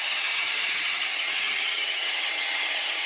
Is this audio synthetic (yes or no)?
yes